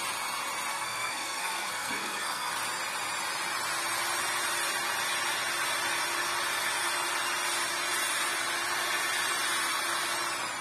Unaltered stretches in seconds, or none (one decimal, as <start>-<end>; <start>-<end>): 0.0-0.7; 2.5-10.6